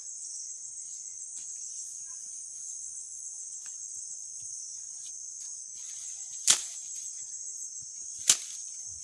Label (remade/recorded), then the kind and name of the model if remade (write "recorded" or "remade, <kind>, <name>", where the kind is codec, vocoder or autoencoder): recorded